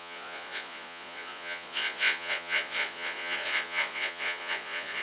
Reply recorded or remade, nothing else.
remade